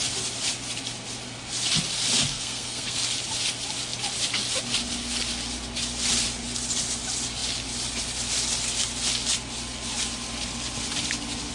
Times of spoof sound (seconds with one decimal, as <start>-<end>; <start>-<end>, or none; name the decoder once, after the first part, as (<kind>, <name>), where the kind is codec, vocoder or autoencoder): 2.3-3.0 (codec, SNAC)